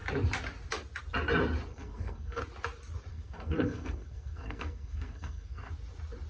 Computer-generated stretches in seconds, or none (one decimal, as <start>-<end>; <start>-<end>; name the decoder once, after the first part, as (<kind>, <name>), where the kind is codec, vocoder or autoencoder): 1.7-2.4 (codec, SNAC); 3.1-5.7

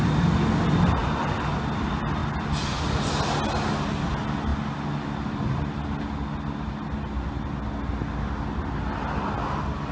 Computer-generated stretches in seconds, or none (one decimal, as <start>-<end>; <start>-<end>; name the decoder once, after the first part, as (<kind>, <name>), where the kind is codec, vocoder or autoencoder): none

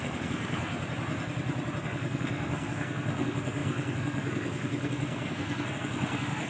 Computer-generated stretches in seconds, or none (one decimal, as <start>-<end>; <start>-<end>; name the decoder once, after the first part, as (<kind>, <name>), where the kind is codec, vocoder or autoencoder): 0.0-0.7 (codec, SNAC); 1.8-6.5

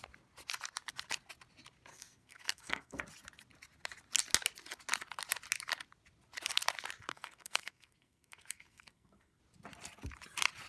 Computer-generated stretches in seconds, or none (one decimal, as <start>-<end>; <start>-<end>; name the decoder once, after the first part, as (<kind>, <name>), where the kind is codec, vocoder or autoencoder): 1.9-3.0 (codec, SNAC); 7.1-9.4

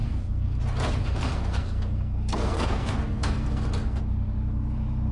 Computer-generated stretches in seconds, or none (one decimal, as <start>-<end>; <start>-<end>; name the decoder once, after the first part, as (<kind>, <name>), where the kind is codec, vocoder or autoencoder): 0.0-0.6 (codec, SNAC); 1.0-4.0

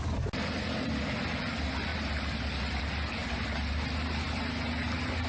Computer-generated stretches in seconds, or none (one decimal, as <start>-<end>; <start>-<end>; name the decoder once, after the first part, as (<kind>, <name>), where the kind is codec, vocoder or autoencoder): none